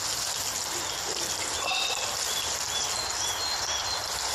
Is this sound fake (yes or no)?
no